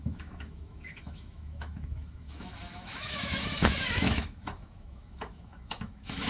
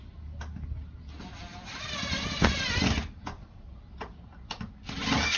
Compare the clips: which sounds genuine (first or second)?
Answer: second